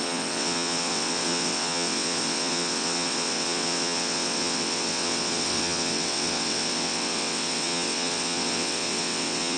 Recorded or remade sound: remade